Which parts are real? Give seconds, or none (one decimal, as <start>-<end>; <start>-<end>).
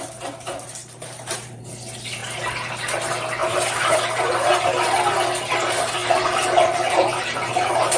0.0-0.8; 1.6-3.4; 4.4-6.0